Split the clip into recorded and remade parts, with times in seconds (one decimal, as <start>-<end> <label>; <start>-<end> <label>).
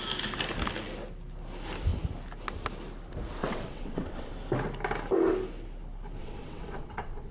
0.0-3.4 recorded; 3.4-4.3 remade; 4.3-6.2 recorded; 6.2-7.3 remade